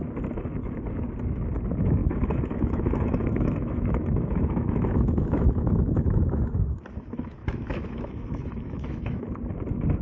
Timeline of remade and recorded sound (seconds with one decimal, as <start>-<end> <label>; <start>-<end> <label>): 0.0-2.0 recorded; 2.0-6.7 remade; 6.7-7.4 recorded; 7.4-9.2 remade; 9.2-10.0 recorded